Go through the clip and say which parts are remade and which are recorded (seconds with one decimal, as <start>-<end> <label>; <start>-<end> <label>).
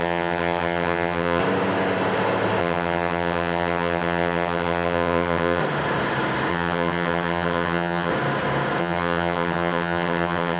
0.0-1.4 remade; 1.4-2.6 recorded; 2.6-5.6 remade; 5.6-6.5 recorded; 6.5-8.1 remade; 8.1-8.8 recorded; 8.8-10.6 remade